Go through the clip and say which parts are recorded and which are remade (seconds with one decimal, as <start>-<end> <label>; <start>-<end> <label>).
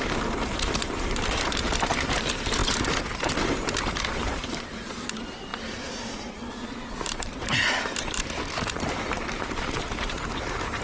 0.0-5.5 remade; 5.5-6.9 recorded; 6.9-10.8 remade